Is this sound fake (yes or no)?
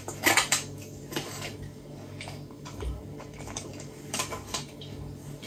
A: yes